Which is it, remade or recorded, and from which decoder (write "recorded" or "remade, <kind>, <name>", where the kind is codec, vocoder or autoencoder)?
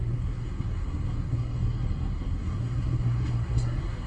remade, codec, SNAC